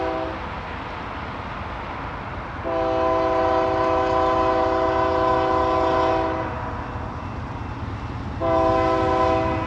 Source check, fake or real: real